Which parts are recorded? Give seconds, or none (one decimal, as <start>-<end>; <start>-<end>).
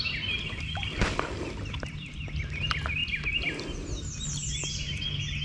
0.0-5.4